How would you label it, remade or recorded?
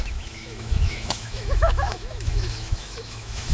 remade